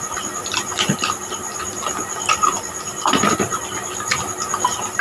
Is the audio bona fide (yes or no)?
yes